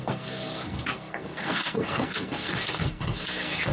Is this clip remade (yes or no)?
yes